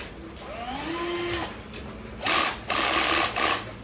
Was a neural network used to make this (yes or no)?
no